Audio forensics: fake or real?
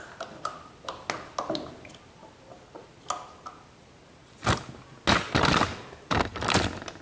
real